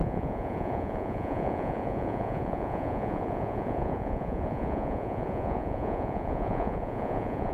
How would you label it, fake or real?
fake